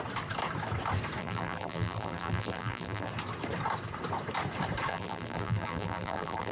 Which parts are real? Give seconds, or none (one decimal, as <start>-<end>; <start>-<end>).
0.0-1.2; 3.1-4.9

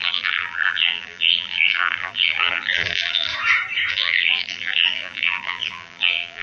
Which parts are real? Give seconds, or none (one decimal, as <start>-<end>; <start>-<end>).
3.3-3.9

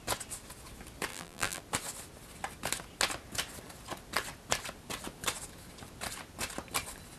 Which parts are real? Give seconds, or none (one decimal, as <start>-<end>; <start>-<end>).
0.0-1.1; 1.6-7.2

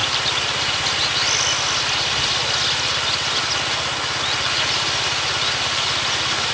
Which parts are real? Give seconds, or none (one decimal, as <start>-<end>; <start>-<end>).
0.0-6.5

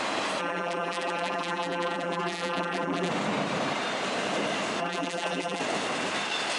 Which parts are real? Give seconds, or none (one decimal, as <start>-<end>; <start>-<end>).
0.0-0.4; 3.1-4.8; 5.6-6.6